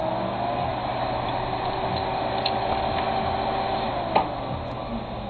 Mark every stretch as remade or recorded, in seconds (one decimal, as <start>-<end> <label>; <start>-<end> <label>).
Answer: 0.0-5.3 recorded